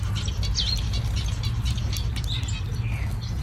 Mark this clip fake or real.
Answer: real